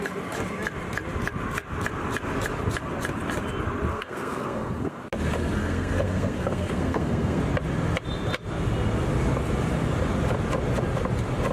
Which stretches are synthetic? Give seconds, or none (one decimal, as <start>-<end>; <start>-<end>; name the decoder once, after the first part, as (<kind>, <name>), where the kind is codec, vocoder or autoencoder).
3.9-5.0 (codec, SNAC); 5.6-7.4